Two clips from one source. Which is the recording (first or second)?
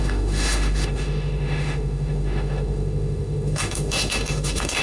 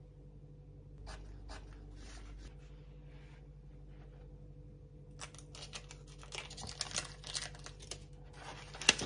second